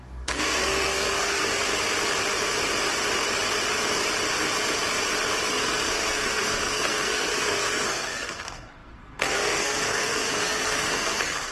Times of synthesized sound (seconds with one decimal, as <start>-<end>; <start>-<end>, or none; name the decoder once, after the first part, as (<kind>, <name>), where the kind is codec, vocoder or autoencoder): 0.0-1.6 (codec, SNAC); 5.5-11.5